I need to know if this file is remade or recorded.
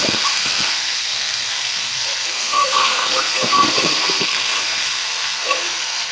remade